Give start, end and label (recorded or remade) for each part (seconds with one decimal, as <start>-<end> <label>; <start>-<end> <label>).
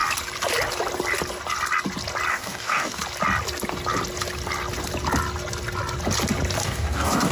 0.0-2.3 recorded; 2.3-3.0 remade; 3.0-6.6 recorded; 6.6-7.3 remade